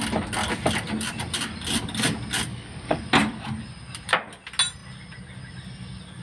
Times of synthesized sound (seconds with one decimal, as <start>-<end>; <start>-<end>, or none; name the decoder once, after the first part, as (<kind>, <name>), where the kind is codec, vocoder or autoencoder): 2.5-3.0 (codec, DAC)